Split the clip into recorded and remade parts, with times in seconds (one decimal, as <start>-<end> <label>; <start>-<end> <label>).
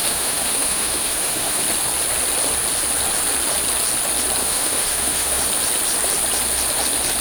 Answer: 0.0-1.6 remade; 1.6-4.4 recorded; 4.4-5.4 remade; 5.4-7.2 recorded